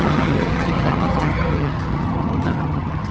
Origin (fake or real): fake